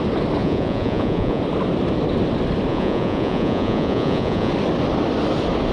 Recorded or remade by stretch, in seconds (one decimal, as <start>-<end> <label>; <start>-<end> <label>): 0.0-0.4 recorded; 0.4-1.4 remade; 1.4-2.7 recorded; 2.7-4.5 remade; 4.5-5.7 recorded